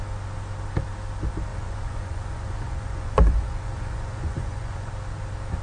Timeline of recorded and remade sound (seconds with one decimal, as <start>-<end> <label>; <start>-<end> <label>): 0.0-1.5 recorded; 1.5-4.9 remade; 4.9-5.6 recorded